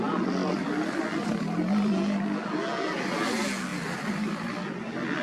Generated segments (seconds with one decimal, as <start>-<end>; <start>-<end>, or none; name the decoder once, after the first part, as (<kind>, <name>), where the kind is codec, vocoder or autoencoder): 3.7-5.2 (vocoder, BigVGAN v2)